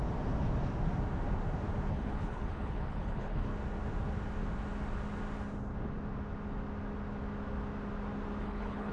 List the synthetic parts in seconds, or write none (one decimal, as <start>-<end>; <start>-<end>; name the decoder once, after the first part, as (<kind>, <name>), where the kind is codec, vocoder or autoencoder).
1.9-3.5 (codec, HILCodec); 8.4-8.9